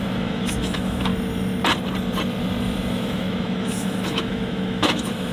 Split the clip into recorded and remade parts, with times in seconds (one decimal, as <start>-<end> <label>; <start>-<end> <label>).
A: 0.0-1.1 remade; 1.1-2.9 recorded; 2.9-5.3 remade